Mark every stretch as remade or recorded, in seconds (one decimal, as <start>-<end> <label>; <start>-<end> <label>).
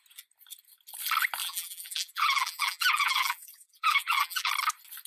0.0-1.4 recorded; 1.4-4.5 remade; 4.5-5.1 recorded